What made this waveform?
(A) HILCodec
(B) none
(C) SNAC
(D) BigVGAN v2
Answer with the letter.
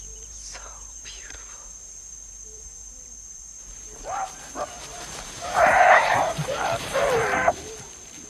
D